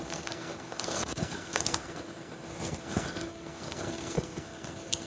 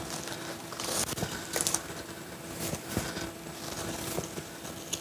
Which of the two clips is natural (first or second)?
second